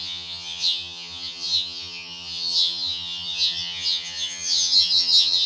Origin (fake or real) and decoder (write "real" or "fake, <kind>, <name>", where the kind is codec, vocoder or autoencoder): fake, vocoder, HiFi-GAN